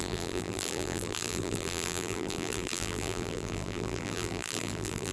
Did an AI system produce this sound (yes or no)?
yes